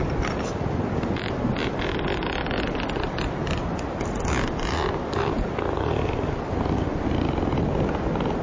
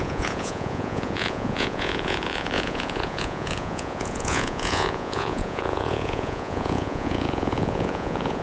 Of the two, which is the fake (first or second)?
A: second